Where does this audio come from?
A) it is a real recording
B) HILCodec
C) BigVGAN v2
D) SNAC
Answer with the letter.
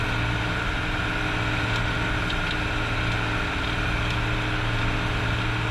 A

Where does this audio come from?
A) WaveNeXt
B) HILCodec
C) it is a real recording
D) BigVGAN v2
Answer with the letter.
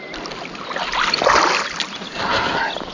C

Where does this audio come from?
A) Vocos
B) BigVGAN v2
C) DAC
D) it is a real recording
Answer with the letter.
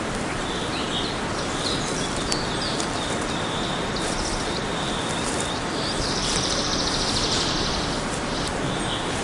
B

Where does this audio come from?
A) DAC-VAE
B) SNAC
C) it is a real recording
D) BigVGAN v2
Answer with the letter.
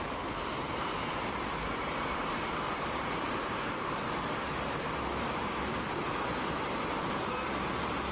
D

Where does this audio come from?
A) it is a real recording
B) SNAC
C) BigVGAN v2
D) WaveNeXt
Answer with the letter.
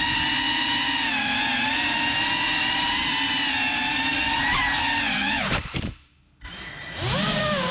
A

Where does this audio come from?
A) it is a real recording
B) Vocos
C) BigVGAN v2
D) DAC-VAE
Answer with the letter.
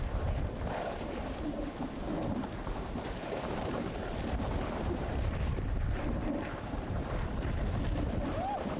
C